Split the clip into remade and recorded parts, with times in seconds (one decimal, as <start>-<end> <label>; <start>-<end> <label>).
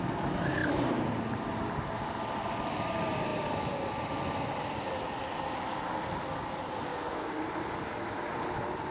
0.0-8.9 recorded